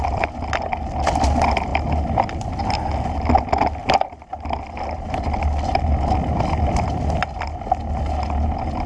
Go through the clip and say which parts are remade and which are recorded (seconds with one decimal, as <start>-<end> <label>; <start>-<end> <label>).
0.0-8.9 recorded